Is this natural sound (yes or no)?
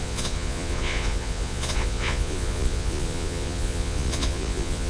no